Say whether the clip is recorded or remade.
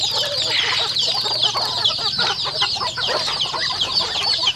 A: recorded